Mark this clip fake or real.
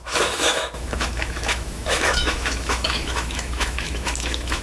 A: fake